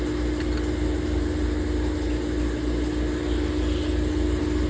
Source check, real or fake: real